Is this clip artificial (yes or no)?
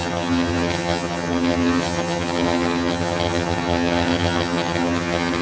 yes